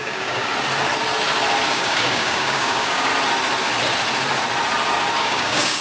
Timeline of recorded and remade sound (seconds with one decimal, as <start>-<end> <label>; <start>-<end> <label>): 0.0-0.5 remade; 0.5-1.7 recorded; 1.7-3.1 remade; 3.1-5.2 recorded; 5.2-5.8 remade